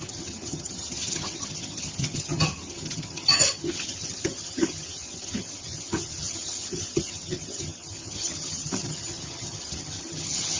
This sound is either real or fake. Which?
fake